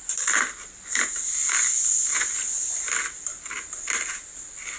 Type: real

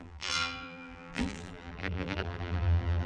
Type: fake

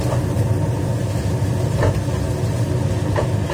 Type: real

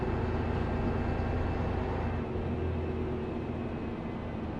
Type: real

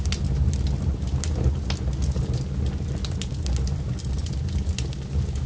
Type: real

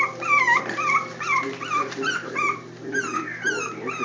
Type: fake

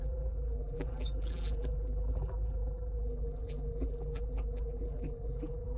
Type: fake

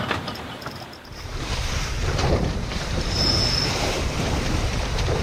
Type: fake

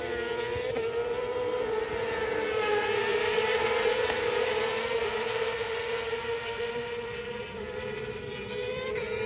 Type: fake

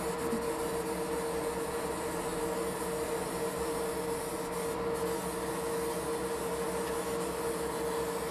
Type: real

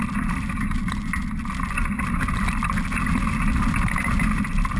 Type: real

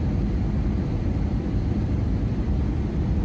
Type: fake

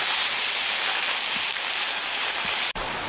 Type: fake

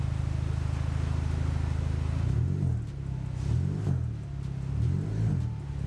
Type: real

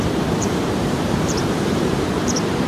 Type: fake